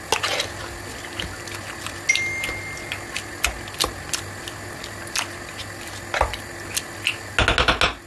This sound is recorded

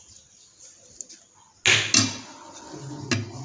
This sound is recorded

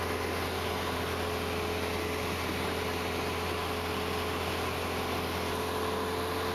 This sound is recorded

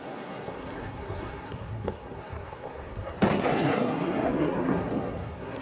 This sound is remade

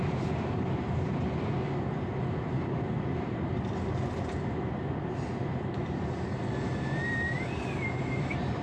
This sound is recorded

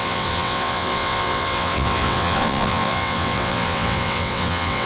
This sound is remade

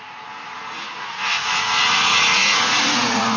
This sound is remade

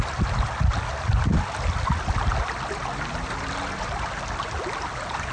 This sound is recorded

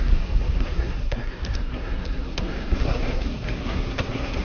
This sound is remade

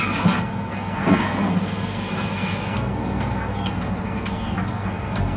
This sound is remade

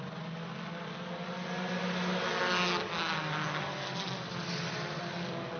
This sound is recorded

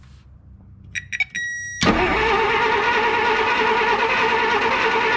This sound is recorded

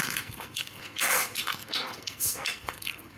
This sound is remade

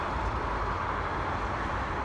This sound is remade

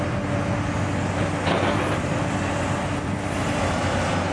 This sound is recorded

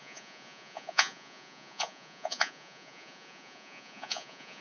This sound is remade